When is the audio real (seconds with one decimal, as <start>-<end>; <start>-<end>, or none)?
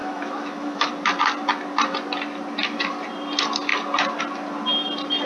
0.9-5.3